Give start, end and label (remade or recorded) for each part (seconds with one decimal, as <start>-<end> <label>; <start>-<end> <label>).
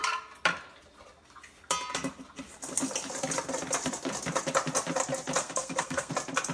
0.0-5.4 recorded; 5.4-6.1 remade; 6.1-6.5 recorded